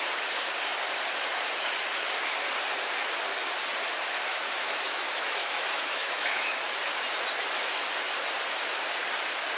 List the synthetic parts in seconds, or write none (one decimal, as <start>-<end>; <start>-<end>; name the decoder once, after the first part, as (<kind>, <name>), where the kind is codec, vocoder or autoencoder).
4.3-6.6 (autoencoder, DAC-VAE)